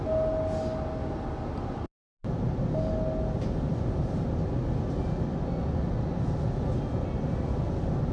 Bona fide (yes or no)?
yes